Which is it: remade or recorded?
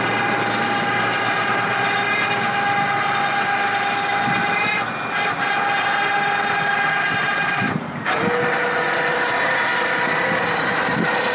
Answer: recorded